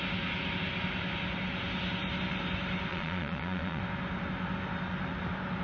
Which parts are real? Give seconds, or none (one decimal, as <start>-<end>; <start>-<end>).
0.0-2.9; 3.8-5.6